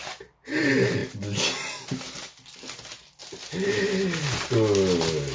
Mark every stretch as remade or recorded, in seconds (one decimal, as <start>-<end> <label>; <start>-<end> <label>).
0.0-5.3 recorded